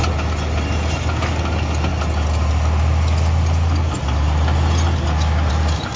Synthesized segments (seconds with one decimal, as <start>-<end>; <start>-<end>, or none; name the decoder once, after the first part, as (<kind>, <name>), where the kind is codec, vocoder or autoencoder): none